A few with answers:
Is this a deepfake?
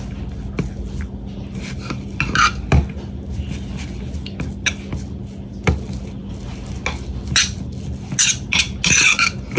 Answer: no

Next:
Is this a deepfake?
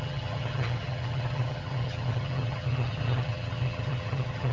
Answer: yes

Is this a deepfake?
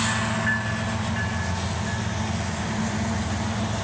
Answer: no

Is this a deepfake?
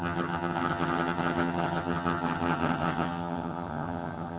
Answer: yes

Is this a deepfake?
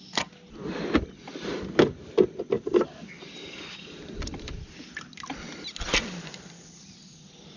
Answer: no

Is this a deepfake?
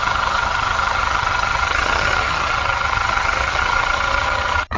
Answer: yes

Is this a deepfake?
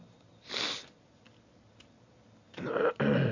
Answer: no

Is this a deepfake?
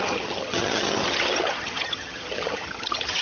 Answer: yes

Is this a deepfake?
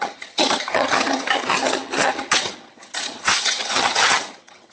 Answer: yes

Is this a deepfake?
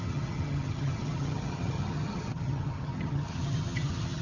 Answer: yes